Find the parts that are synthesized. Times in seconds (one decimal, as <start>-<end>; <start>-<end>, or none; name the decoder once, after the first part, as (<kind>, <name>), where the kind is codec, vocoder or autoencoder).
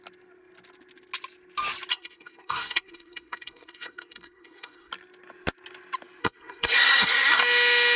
1.9-4.9 (codec, SNAC); 6.2-7.4